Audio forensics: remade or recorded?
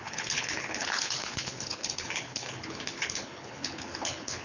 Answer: remade